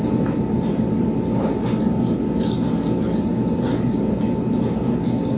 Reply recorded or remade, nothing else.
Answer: recorded